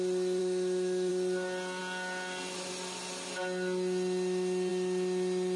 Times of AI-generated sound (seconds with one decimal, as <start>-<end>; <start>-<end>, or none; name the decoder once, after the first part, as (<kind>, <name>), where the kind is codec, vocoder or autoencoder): 0.4-1.1 (autoencoder, DAC-VAE)